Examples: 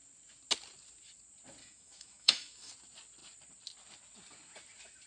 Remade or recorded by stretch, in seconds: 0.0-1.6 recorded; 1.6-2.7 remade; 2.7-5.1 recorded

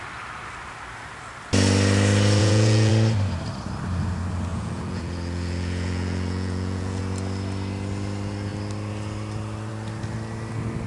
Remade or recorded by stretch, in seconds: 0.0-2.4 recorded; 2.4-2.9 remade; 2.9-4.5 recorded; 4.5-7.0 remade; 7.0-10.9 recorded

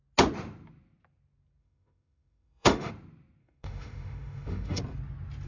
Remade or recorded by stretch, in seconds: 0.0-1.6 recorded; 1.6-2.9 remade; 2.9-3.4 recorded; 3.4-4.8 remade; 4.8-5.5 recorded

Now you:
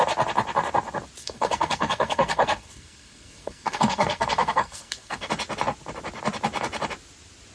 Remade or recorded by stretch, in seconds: 0.0-1.2 recorded; 1.2-5.3 remade; 5.3-7.5 recorded